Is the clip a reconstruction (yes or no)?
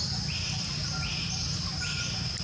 no